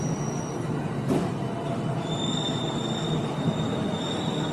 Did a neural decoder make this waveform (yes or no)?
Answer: no